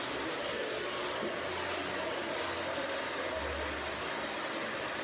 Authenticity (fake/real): real